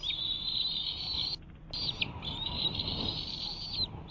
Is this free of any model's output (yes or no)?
yes